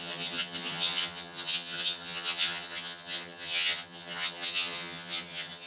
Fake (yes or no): yes